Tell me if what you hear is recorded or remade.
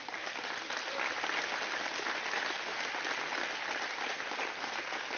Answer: recorded